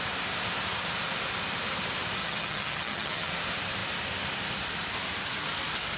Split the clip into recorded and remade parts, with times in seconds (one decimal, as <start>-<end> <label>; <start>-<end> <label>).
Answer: 0.0-2.2 recorded; 2.2-3.3 remade; 3.3-6.0 recorded